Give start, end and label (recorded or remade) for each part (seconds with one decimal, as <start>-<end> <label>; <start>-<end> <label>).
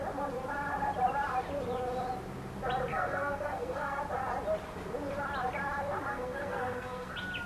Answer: 0.0-2.9 recorded; 2.9-4.0 remade; 4.0-6.1 recorded; 6.1-7.1 remade; 7.1-7.5 recorded